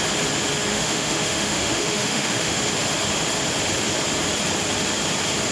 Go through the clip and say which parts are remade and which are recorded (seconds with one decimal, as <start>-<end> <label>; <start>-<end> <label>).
0.0-0.7 recorded; 0.7-2.6 remade; 2.6-5.5 recorded